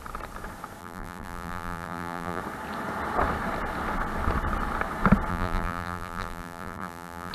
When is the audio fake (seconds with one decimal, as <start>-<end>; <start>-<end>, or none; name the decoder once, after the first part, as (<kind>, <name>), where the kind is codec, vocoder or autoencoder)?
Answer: 0.8-2.4 (vocoder, BigVGAN v2); 5.3-7.3

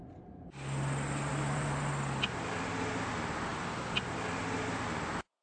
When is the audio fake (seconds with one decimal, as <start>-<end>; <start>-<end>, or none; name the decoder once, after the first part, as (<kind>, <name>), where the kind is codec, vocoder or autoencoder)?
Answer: 1.3-1.9 (vocoder, BigVGAN v2)

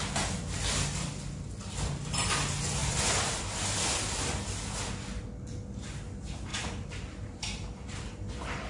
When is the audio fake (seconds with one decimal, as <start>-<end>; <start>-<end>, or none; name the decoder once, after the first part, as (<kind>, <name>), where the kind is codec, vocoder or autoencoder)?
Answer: 6.5-7.4 (vocoder, BigVGAN v2)

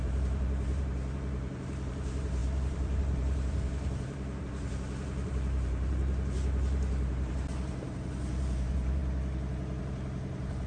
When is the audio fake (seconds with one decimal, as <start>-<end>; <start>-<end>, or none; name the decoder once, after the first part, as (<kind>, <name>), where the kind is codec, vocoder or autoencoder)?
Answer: 0.0-9.0 (vocoder, BigVGAN v2); 9.8-10.7

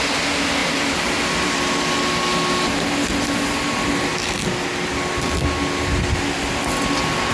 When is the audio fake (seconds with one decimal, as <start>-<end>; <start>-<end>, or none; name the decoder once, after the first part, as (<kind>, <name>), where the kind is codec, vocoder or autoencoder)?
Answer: 0.6-1.8 (vocoder, BigVGAN v2)

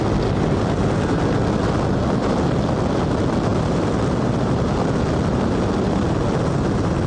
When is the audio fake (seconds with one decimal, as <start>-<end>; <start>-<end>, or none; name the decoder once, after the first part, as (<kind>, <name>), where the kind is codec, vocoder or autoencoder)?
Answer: 3.5-4.8 (vocoder, BigVGAN v2)

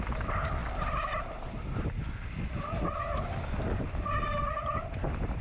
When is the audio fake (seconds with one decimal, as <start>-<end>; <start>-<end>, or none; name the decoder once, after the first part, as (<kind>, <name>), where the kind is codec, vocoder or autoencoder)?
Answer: 0.6-3.8 (vocoder, BigVGAN v2)